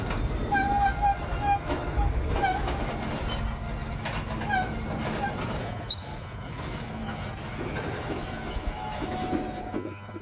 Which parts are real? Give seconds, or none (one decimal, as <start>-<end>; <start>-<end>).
0.0-1.3; 2.9-5.6